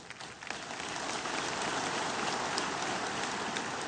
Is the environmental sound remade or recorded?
recorded